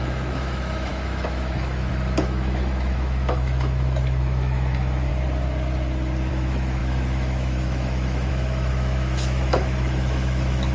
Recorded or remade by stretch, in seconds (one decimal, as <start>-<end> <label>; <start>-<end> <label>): 0.0-5.1 remade; 5.1-6.3 recorded; 6.3-10.7 remade